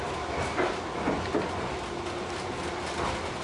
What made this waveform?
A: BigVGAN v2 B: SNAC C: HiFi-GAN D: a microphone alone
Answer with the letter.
D